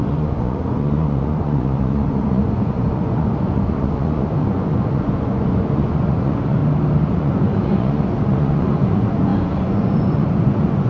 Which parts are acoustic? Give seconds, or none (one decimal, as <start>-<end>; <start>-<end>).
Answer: 6.6-7.2